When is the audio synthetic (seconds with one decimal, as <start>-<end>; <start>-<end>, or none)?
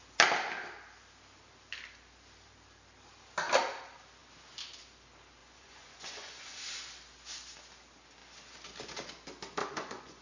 5.4-6.6; 9.6-10.2